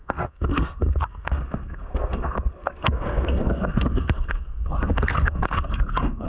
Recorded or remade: remade